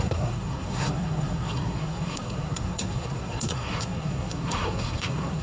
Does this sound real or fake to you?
fake